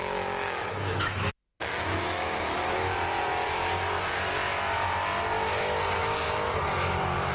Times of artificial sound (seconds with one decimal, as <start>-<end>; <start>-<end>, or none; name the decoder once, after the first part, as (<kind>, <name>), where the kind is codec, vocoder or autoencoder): 0.0-2.9 (autoencoder, DAC-VAE); 6.0-6.5